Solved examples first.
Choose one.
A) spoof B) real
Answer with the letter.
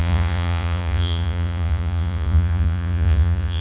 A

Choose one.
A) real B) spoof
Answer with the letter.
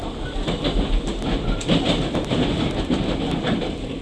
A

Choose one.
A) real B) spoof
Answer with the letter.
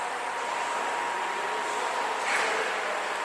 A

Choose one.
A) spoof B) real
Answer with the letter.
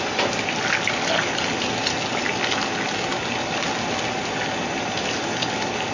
B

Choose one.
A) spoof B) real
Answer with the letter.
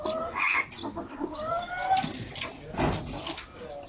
B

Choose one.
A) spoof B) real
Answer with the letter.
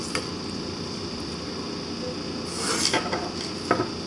B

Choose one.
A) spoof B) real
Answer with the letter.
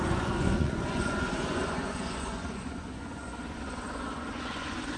A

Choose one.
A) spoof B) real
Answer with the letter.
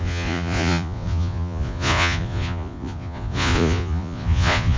A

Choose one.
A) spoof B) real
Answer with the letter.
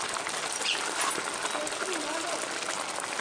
B